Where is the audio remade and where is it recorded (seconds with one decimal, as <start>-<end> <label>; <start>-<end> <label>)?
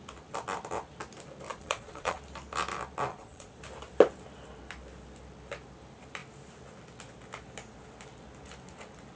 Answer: 0.0-1.5 recorded; 1.5-2.2 remade; 2.2-3.1 recorded; 3.1-3.6 remade; 3.6-9.2 recorded